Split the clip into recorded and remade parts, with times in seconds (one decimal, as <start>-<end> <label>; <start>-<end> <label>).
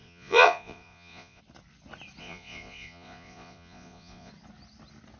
0.0-1.4 remade; 1.4-2.2 recorded; 2.2-4.3 remade; 4.3-5.2 recorded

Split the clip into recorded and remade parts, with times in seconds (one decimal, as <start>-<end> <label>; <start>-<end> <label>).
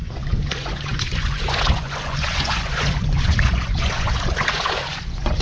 0.0-5.4 remade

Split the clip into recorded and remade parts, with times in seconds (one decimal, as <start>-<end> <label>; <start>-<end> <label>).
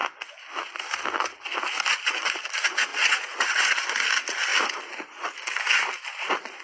0.0-2.9 recorded; 2.9-3.9 remade; 3.9-6.6 recorded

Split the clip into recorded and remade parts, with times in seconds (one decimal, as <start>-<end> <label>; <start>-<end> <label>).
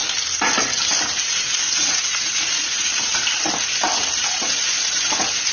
0.0-1.2 recorded; 1.2-2.9 remade; 2.9-4.2 recorded; 4.2-5.5 remade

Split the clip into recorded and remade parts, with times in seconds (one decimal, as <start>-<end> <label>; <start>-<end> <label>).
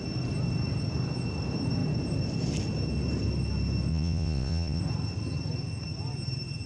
0.0-3.9 recorded; 3.9-4.8 remade; 4.8-6.7 recorded